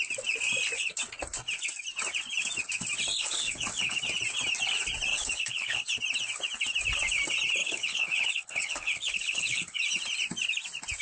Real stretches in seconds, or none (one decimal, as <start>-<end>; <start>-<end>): 0.0-3.2; 4.0-5.1; 5.8-7.6; 9.8-11.0